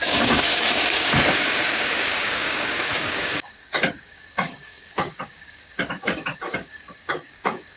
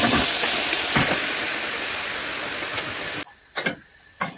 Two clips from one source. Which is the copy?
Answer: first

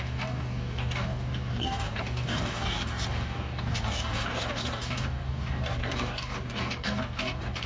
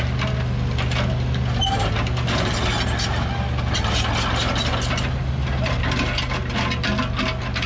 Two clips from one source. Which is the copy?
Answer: first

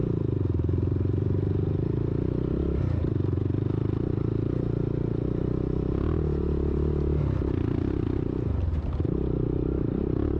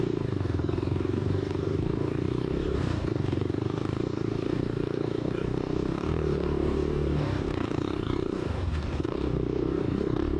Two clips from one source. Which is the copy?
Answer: second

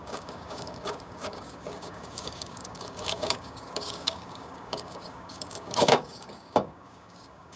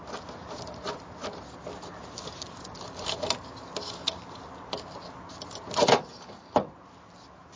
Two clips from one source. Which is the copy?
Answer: first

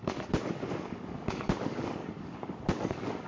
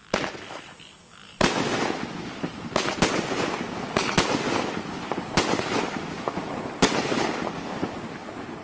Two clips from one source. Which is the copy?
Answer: first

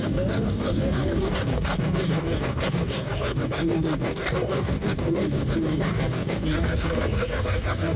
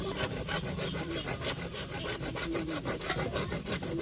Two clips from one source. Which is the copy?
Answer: first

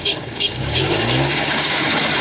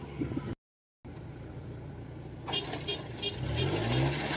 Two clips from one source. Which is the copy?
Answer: first